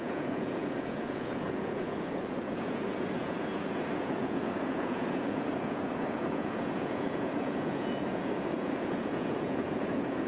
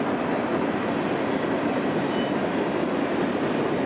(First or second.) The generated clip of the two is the first